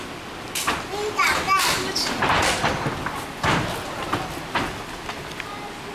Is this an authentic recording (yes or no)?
yes